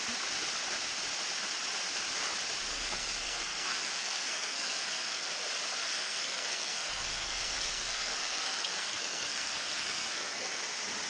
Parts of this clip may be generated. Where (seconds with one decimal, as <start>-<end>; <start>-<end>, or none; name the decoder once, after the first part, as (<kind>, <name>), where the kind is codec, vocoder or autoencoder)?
2.7-5.3 (codec, SNAC); 5.7-10.6